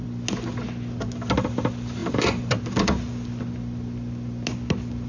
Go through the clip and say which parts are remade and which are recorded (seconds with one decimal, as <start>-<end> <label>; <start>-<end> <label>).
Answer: 0.0-2.0 recorded; 2.0-2.5 remade; 2.5-5.1 recorded